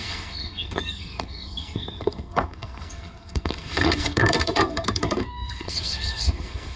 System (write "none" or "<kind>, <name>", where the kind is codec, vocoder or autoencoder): codec, SNAC